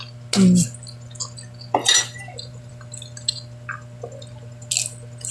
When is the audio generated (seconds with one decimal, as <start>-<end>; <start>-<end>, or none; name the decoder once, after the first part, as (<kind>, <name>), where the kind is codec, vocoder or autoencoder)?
1.8-2.7 (vocoder, BigVGAN v2)

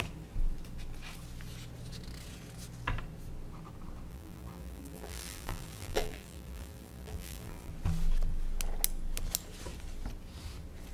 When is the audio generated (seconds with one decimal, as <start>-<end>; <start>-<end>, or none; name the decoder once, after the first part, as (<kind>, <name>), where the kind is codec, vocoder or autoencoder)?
4.1-7.7 (vocoder, BigVGAN v2)

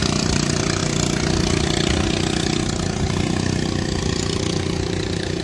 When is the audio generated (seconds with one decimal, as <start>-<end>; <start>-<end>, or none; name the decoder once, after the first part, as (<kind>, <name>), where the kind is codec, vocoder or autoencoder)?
0.0-0.8 (vocoder, BigVGAN v2); 4.0-5.4

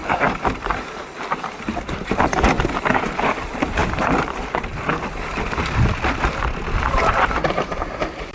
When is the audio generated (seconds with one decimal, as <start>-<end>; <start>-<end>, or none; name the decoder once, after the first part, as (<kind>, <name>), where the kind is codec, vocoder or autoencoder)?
1.0-8.3 (vocoder, BigVGAN v2)

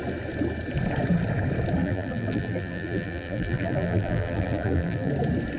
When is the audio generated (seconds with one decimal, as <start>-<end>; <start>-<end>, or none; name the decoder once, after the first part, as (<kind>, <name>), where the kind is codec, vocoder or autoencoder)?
1.8-5.1 (vocoder, BigVGAN v2)